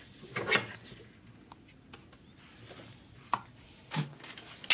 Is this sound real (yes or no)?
yes